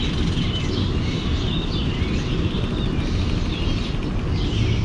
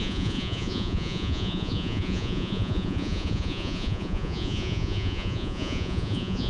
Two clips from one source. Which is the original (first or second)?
first